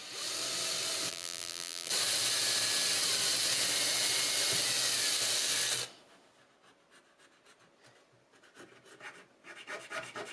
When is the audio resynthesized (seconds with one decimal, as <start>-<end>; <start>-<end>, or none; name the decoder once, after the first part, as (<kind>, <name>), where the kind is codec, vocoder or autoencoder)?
1.1-1.9 (vocoder, BigVGAN v2)